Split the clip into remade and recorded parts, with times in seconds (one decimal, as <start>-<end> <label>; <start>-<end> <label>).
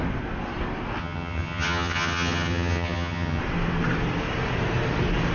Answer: 0.0-1.0 recorded; 1.0-3.4 remade; 3.4-5.3 recorded